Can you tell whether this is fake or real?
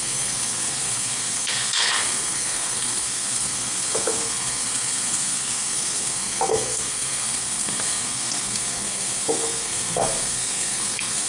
fake